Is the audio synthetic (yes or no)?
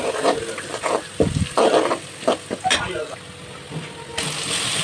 no